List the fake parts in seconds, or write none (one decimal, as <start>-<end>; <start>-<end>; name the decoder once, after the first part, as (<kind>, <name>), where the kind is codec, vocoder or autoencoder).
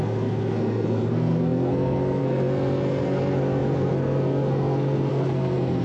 0.0-5.8 (codec, SNAC)